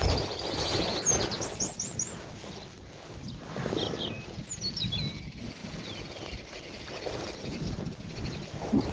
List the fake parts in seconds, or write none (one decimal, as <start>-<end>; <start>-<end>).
none